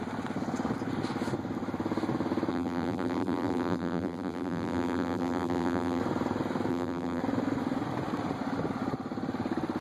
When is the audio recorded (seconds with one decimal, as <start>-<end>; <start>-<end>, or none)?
0.0-2.5; 6.0-6.7; 7.2-9.8